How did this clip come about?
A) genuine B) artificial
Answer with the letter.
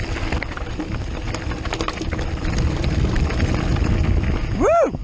A